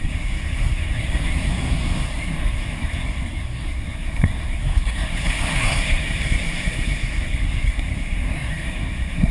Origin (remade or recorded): remade